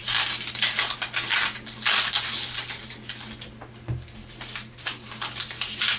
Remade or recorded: recorded